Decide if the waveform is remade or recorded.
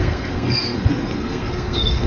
remade